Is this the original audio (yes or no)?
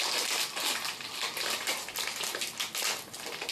yes